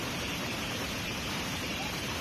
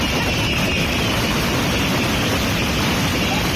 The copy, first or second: first